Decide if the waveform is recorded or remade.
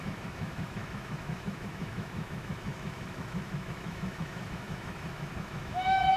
remade